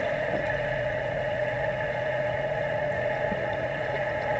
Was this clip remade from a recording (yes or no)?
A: yes